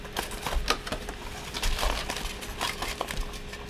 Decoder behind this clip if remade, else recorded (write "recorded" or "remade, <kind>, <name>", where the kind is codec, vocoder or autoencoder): recorded